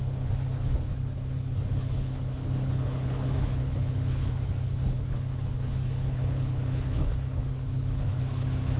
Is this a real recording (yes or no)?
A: no